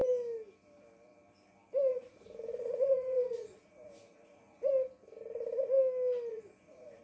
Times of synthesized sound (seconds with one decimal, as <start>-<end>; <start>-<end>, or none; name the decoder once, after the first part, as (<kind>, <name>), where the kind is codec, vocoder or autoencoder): 1.9-4.7 (vocoder, Vocos); 6.3-7.0